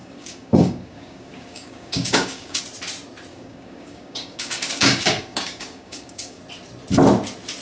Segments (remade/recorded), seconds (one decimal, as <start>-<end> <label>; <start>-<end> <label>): 0.0-2.6 remade; 2.6-3.3 recorded; 3.3-6.4 remade; 6.4-7.6 recorded